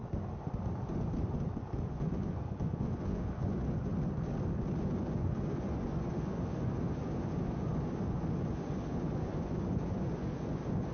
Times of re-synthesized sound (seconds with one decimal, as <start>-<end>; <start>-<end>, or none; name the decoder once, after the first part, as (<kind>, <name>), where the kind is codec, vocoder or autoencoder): 1.9-3.9 (vocoder, Vocos); 4.8-10.9